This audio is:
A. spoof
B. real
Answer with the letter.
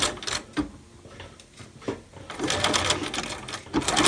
B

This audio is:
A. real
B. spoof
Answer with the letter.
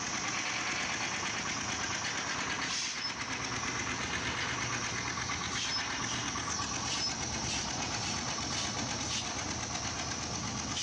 A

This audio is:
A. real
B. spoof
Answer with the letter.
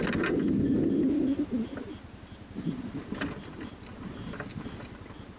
A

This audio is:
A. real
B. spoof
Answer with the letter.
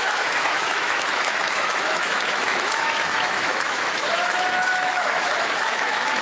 B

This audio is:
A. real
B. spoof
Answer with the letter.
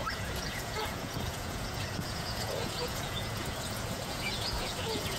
B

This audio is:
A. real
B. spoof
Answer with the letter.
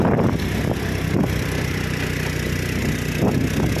A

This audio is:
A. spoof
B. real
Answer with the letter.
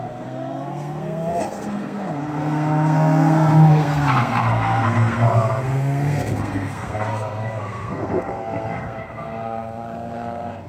A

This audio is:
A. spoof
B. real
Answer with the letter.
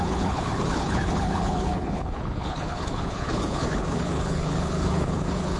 A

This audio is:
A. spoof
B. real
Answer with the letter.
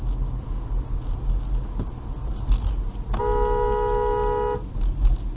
B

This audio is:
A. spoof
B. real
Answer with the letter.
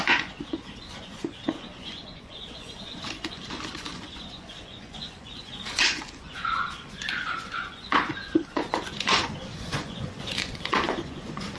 A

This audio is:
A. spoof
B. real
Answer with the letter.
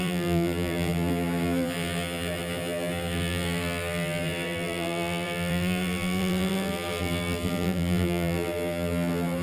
A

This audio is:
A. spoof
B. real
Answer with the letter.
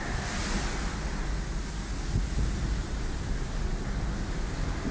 B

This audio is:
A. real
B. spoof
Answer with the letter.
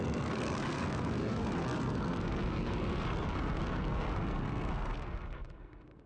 B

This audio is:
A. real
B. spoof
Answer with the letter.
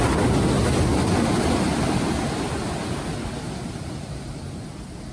A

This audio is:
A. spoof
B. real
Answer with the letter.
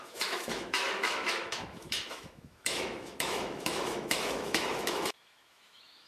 A